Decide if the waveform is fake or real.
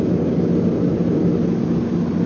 real